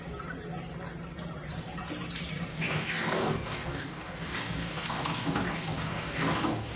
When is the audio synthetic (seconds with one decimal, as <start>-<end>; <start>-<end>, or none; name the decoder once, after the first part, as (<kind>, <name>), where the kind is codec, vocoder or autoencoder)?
2.5-6.8 (codec, DAC)